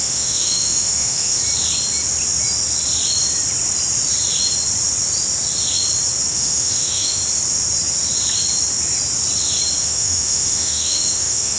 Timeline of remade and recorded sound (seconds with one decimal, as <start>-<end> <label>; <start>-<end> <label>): 0.0-1.4 remade; 1.4-6.3 recorded; 6.3-7.2 remade; 7.2-9.8 recorded; 9.8-11.6 remade